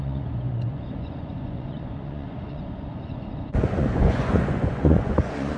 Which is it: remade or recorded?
remade